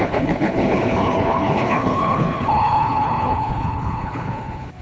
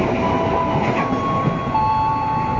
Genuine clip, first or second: second